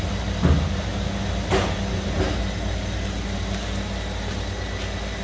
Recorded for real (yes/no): yes